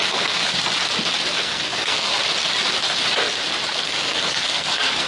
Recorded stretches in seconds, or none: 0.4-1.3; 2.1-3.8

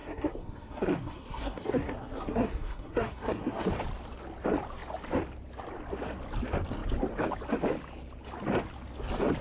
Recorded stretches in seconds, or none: 3.7-9.4

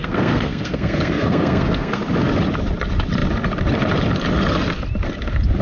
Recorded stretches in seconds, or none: 2.0-5.6

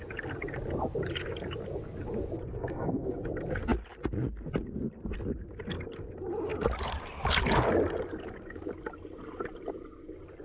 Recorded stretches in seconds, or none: 0.0-2.5; 3.2-10.4

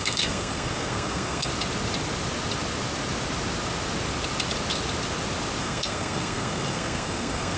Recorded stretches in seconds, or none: 1.5-5.6

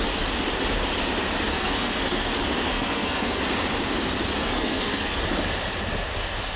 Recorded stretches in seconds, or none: 0.0-1.5; 2.3-2.7; 3.4-4.4; 5.2-6.6